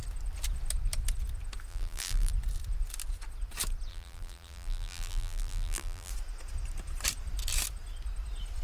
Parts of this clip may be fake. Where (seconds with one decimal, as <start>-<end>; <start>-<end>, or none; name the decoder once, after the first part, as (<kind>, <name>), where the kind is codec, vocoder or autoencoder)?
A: 1.7-2.3 (vocoder, BigVGAN v2); 3.9-6.1